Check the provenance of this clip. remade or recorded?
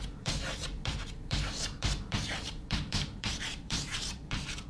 remade